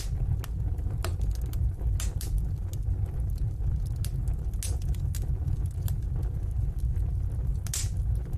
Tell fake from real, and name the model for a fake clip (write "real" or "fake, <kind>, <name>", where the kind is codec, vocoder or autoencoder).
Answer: real